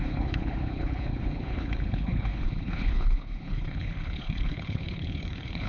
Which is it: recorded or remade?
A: remade